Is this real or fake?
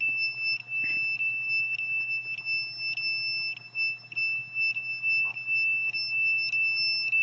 real